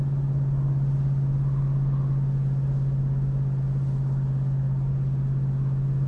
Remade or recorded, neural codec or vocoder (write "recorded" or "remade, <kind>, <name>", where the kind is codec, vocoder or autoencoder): recorded